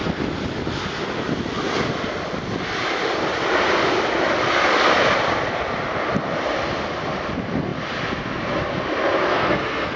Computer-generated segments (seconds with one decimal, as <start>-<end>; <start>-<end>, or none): 9.3-10.0

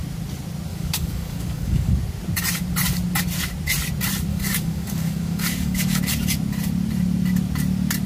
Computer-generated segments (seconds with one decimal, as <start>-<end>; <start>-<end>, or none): 0.7-1.9; 4.3-6.0

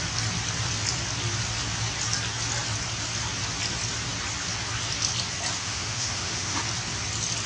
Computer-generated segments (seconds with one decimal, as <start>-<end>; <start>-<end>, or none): 5.6-6.6

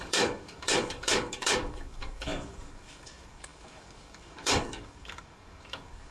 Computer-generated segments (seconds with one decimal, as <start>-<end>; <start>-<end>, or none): 0.0-6.1

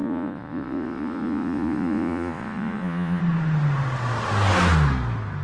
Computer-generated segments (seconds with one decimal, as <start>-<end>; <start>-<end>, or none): 0.0-3.2